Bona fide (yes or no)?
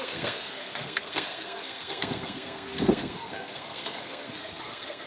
no